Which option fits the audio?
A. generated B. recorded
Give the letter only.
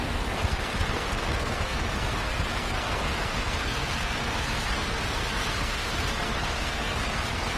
A